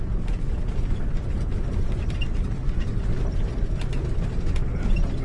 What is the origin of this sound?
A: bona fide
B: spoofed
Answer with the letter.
A